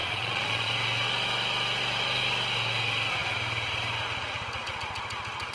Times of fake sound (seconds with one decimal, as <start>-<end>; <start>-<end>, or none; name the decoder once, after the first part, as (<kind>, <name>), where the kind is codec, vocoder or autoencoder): 0.0-0.7 (vocoder, Vocos)